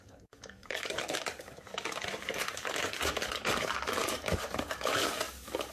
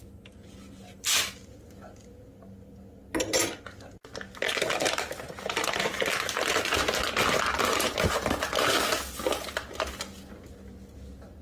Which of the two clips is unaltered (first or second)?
second